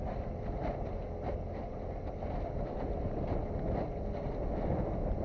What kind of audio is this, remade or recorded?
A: recorded